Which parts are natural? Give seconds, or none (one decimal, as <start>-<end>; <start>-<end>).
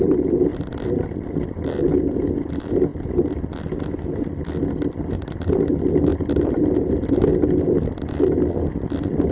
0.0-0.5; 1.9-6.1; 6.6-9.3